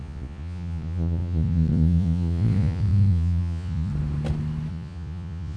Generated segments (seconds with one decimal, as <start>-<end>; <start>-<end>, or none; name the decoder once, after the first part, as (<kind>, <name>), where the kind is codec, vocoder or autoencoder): 0.0-3.9 (vocoder, Vocos); 4.7-5.6